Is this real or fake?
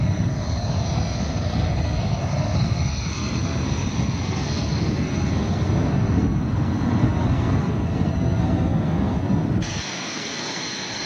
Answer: fake